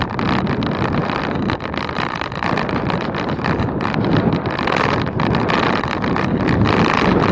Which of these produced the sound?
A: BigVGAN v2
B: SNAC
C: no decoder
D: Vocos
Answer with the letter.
C